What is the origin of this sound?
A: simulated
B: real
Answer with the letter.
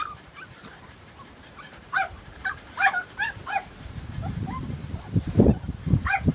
A